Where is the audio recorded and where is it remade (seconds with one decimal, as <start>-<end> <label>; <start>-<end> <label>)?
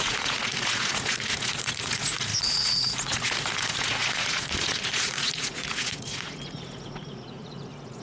0.0-8.0 remade